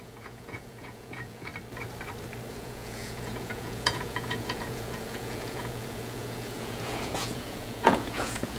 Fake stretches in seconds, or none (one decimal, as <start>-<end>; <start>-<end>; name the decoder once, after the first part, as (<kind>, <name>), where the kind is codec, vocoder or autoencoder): 0.0-1.5 (vocoder, Vocos); 2.5-8.6